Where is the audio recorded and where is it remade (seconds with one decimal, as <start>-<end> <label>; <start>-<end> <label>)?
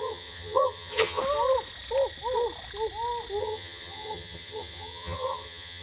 0.0-1.2 remade; 1.2-3.4 recorded; 3.4-5.8 remade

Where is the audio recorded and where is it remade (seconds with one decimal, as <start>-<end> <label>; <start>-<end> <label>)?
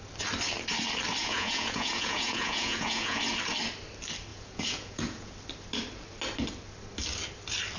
0.0-1.2 recorded; 1.2-3.2 remade; 3.2-4.3 recorded; 4.3-5.3 remade; 5.3-7.8 recorded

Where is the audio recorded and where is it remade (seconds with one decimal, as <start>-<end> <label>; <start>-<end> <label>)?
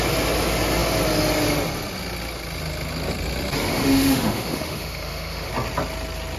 0.0-3.7 recorded; 3.7-5.5 remade; 5.5-6.4 recorded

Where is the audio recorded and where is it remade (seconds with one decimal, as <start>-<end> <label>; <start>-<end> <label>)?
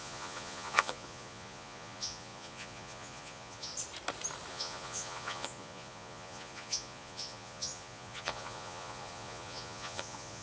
0.0-3.7 remade; 3.7-4.5 recorded; 4.5-10.4 remade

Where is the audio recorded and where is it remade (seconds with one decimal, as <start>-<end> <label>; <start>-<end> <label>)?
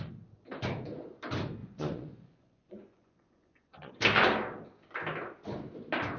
0.0-1.6 recorded; 1.6-3.9 remade; 3.9-6.2 recorded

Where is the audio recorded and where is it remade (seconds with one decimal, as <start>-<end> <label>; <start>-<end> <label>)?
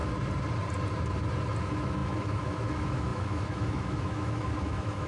0.0-1.6 recorded; 1.6-5.1 remade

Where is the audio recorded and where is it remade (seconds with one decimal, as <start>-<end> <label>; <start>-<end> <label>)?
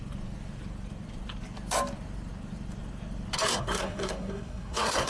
0.0-3.5 recorded; 3.5-5.1 remade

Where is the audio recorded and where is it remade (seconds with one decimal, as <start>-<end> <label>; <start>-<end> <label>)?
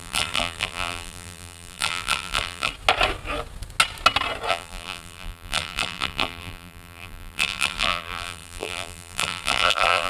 0.0-2.7 remade; 2.7-4.5 recorded; 4.5-10.1 remade